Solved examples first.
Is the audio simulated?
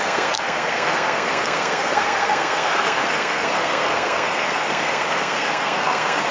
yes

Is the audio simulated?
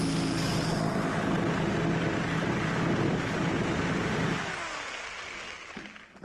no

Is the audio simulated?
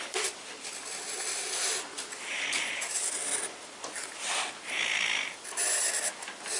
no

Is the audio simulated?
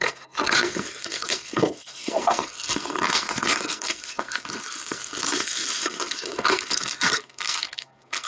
yes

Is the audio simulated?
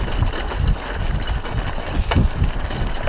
no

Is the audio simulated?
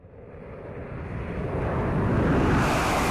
no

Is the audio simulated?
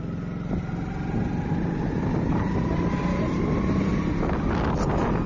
no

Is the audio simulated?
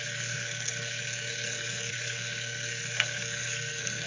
yes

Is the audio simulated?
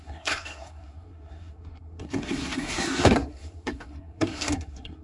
yes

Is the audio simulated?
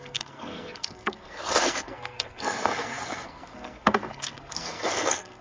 yes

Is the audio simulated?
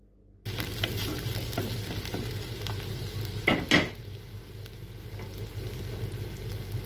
no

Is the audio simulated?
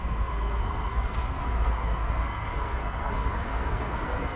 yes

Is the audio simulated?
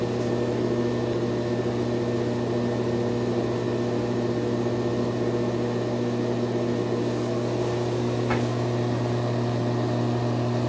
no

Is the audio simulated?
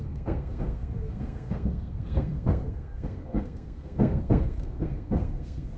yes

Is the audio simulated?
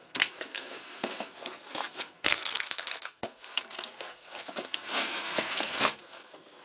yes